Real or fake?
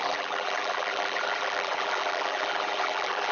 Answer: fake